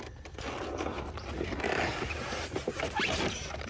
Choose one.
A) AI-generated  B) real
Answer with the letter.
B